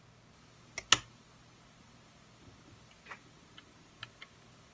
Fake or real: real